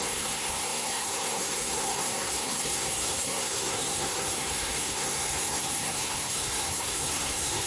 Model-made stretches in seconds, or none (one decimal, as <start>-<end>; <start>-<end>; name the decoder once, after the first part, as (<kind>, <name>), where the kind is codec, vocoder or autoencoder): 0.0-7.7 (codec, SNAC)